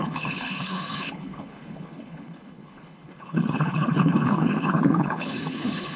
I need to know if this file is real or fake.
fake